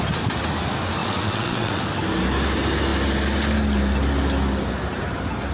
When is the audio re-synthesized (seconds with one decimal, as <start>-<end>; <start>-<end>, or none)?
1.0-1.8